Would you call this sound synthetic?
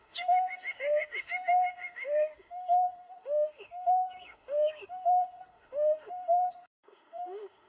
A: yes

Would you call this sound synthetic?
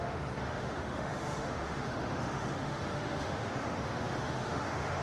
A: yes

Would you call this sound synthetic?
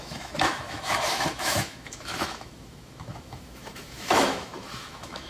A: yes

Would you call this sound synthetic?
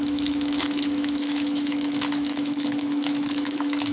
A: yes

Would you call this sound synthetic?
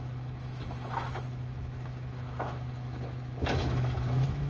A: yes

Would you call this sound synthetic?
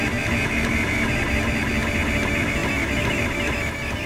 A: no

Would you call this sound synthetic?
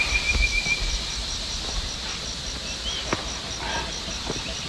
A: no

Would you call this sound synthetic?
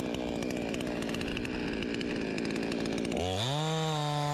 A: no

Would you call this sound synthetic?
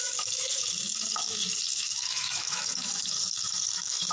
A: yes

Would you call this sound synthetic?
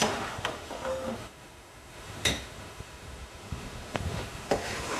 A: yes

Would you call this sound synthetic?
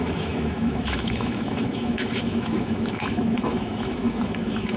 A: yes